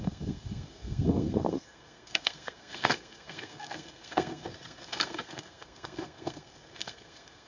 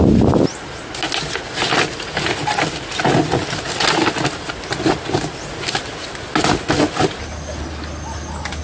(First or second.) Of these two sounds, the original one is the second